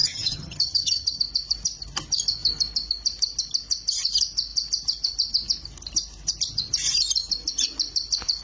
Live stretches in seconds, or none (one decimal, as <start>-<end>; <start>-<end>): 1.2-8.4